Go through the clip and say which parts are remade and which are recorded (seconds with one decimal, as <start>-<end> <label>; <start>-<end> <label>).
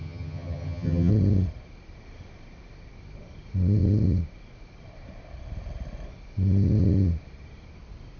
0.0-1.1 remade; 1.1-8.2 recorded